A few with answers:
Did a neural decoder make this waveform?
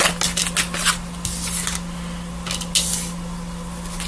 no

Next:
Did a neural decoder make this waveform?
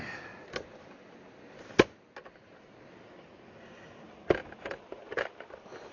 no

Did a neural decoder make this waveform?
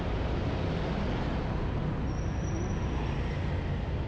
no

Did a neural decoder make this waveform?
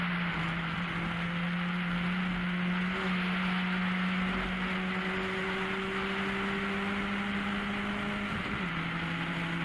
no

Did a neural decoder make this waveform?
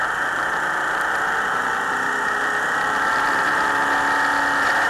no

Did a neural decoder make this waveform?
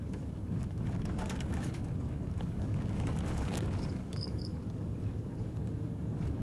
yes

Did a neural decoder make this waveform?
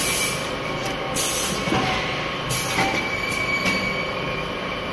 no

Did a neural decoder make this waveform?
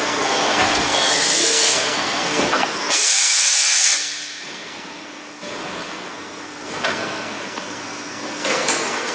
yes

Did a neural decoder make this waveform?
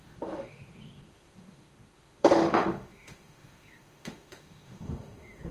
yes